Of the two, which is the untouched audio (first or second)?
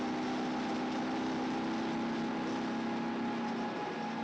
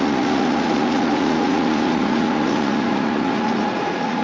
first